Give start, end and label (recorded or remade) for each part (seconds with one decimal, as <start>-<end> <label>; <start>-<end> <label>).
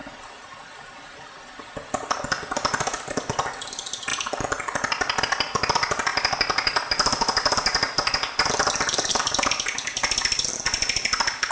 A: 0.0-11.5 recorded